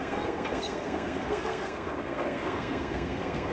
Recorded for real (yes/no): no